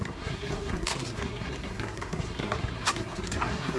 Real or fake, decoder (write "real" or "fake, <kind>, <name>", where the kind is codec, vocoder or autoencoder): fake, codec, SNAC